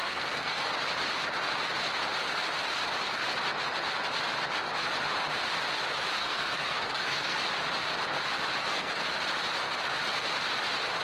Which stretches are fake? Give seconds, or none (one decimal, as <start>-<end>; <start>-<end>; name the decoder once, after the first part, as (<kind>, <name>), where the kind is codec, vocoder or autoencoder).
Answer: 0.0-0.7 (codec, SNAC); 6.2-7.4; 8.6-9.1